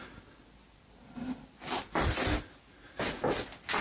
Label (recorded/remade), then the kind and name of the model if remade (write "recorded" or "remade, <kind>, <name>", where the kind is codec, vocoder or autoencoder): recorded